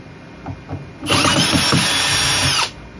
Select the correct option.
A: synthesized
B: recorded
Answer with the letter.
B